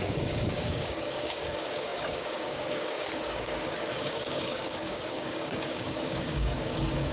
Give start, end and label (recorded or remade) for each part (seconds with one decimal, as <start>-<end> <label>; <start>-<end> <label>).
0.0-7.1 remade